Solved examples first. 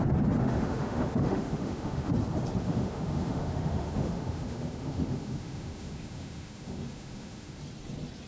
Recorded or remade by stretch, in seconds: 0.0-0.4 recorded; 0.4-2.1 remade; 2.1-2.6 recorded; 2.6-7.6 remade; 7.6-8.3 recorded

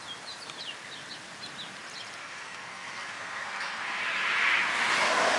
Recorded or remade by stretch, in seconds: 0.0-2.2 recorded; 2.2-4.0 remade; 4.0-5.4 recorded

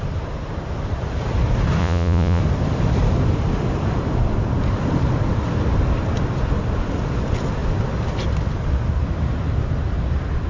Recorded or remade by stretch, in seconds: 0.0-1.8 recorded; 1.8-2.4 remade; 2.4-10.5 recorded

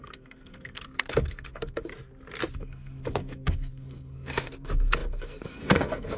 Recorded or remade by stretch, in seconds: 0.0-1.9 remade; 1.9-2.5 recorded; 2.5-6.2 remade

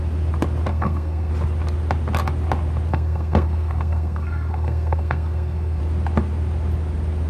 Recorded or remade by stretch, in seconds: 0.0-0.7 recorded; 0.7-1.3 remade; 1.3-2.9 recorded; 2.9-5.8 remade; 5.8-7.3 recorded

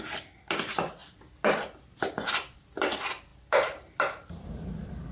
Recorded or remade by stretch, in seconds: 0.0-5.1 remade

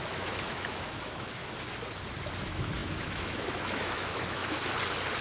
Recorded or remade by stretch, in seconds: 0.0-1.4 remade; 1.4-2.4 recorded; 2.4-4.4 remade; 4.4-5.2 recorded